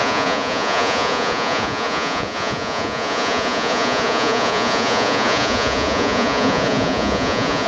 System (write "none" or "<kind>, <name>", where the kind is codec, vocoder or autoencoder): vocoder, Vocos